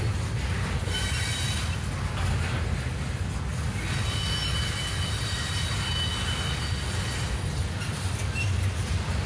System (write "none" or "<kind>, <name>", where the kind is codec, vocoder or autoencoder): none